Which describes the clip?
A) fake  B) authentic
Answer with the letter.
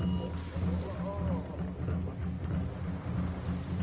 B